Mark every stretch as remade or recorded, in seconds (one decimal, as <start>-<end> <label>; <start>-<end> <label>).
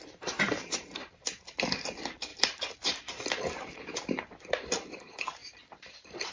0.0-6.3 remade